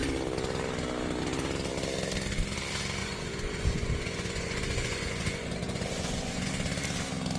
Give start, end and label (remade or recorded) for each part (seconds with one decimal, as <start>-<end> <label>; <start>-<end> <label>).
0.0-3.0 recorded; 3.0-6.5 remade; 6.5-7.4 recorded